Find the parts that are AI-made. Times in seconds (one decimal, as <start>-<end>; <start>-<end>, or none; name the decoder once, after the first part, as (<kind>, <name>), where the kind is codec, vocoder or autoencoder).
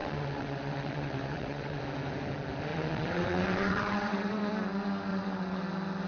0.0-1.8 (vocoder, WaveNeXt); 2.7-4.5; 5.1-5.6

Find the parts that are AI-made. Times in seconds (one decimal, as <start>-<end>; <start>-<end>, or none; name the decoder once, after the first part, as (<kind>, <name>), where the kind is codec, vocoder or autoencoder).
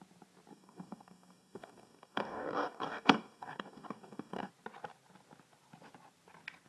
0.5-4.5 (codec, DAC)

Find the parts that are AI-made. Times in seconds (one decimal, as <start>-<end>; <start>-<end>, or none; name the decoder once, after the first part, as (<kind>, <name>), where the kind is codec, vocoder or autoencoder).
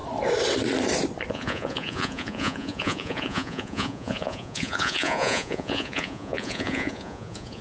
1.3-7.6 (vocoder, Vocos)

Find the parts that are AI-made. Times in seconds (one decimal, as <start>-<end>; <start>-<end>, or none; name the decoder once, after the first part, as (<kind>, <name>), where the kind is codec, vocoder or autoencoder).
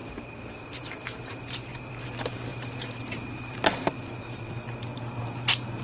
0.0-1.9 (vocoder, BigVGAN v2); 2.5-4.4; 5.2-5.8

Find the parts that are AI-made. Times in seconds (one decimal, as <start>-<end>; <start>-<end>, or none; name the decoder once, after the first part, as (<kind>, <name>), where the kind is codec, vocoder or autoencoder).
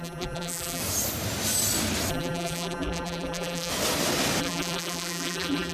0.0-0.8 (vocoder, BigVGAN v2); 2.1-3.7; 4.4-5.7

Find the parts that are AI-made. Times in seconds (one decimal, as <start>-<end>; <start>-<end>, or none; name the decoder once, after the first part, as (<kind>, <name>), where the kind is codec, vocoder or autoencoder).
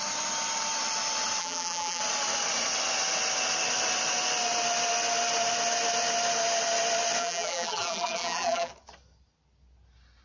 1.4-2.0 (vocoder, BigVGAN v2); 7.2-8.7